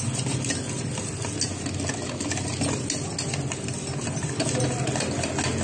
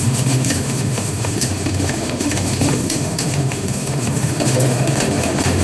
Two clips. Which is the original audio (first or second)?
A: first